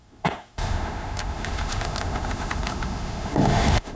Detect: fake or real fake